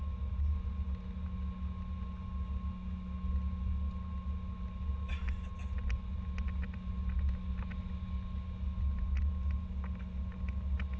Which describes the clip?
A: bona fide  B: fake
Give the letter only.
A